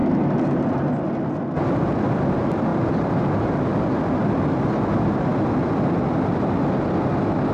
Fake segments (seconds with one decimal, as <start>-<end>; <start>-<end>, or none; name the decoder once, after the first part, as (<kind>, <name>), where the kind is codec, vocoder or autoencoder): 2.7-4.4 (vocoder, BigVGAN v2)